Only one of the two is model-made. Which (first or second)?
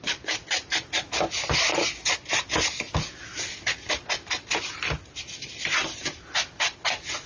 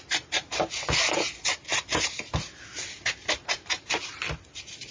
second